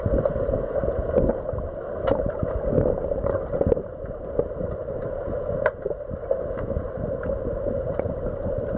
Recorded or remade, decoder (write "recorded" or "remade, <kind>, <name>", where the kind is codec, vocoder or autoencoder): recorded